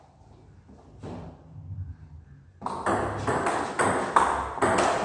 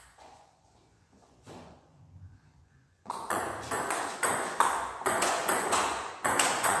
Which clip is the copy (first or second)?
second